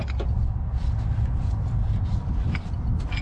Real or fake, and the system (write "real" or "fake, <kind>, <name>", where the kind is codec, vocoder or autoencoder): real